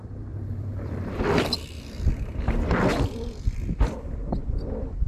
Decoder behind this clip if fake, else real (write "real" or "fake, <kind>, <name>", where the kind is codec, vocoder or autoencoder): fake, vocoder, BigVGAN v2